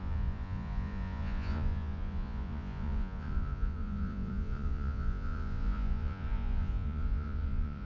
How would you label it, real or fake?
fake